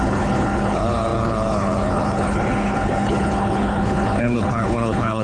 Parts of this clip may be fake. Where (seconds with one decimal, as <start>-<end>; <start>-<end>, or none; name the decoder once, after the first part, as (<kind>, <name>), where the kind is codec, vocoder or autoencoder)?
0.0-5.2 (codec, HILCodec)